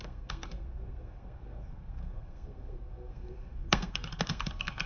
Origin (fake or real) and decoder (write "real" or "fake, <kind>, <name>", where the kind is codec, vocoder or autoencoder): fake, codec, SNAC